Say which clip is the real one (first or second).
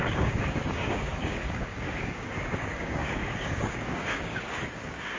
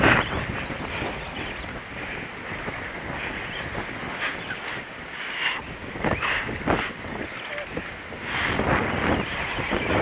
second